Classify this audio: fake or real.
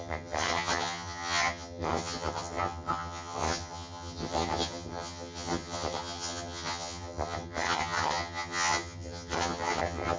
fake